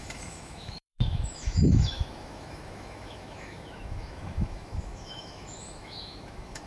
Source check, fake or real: fake